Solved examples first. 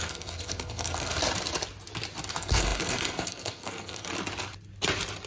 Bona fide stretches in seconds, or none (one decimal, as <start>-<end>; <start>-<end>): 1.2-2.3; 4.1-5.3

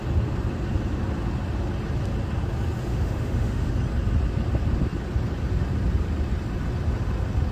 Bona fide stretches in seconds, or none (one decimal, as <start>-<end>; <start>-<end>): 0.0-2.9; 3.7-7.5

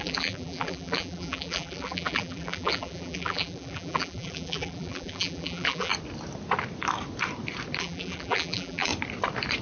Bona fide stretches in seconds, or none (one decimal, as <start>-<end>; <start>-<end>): 5.9-7.8; 8.9-9.6

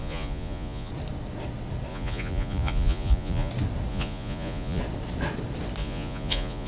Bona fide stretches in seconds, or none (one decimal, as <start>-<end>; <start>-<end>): 0.9-1.9; 3.5-3.9; 4.8-5.8

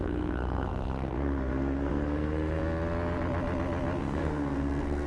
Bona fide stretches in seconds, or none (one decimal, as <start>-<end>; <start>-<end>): 2.6-4.0

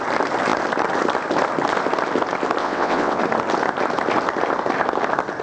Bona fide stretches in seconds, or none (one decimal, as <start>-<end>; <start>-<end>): 0.0-2.6; 3.2-5.4